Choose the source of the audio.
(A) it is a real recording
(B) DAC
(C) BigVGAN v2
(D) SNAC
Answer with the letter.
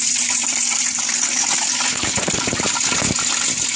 A